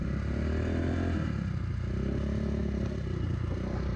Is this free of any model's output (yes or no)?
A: yes